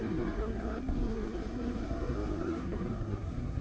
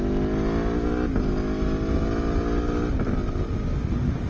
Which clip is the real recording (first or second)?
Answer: second